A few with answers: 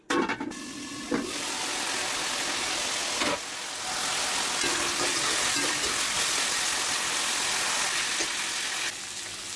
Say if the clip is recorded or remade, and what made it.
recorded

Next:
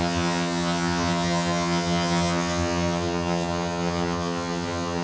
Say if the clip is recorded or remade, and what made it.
remade, vocoder, HiFi-GAN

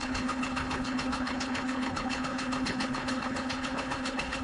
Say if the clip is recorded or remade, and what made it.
remade, codec, HILCodec